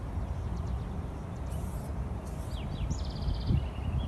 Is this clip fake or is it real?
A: real